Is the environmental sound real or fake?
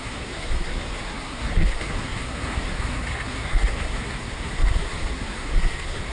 fake